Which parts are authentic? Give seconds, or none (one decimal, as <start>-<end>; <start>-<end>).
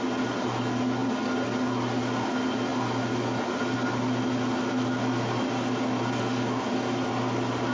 0.0-7.7